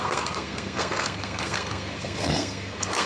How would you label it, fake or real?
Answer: fake